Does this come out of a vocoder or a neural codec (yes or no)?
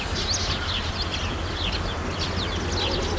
no